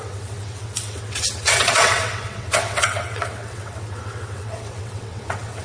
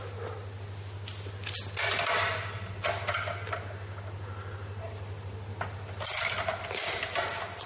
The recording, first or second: second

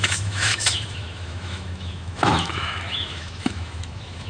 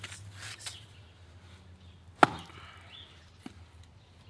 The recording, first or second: second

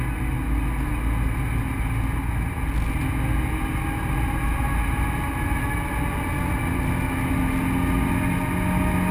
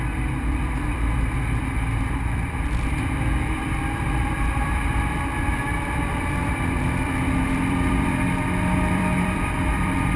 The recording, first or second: first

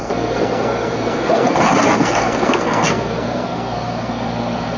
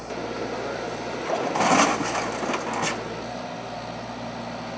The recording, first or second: second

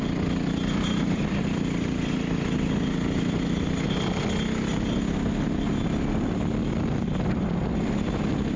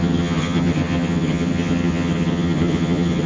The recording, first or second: first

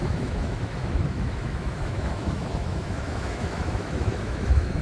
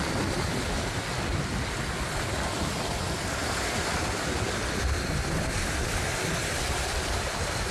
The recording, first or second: second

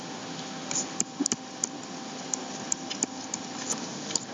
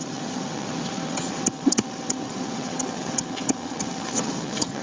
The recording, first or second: first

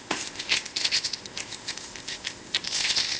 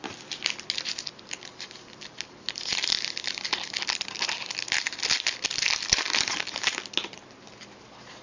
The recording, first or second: second